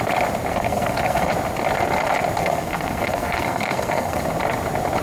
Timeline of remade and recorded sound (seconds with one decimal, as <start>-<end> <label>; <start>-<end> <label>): 0.0-0.5 recorded; 0.5-1.3 remade; 1.3-2.4 recorded; 2.4-4.2 remade; 4.2-5.0 recorded